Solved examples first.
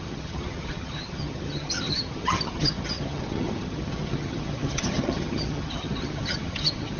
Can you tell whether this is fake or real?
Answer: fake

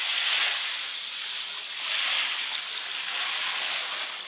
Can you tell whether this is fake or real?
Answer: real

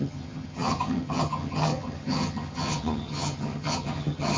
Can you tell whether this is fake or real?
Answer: fake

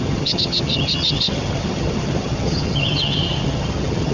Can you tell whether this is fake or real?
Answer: fake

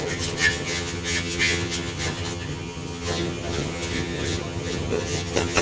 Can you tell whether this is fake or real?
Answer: fake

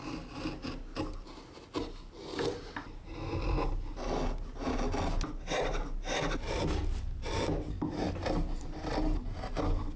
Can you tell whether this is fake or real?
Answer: real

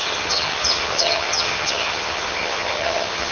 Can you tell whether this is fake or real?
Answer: fake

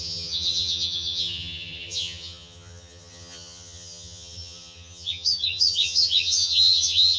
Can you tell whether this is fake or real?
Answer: fake